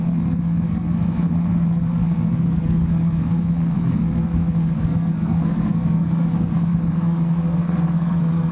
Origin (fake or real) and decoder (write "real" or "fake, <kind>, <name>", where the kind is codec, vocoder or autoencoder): fake, codec, SNAC